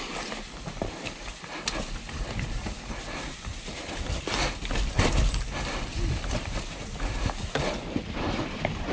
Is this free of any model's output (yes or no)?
yes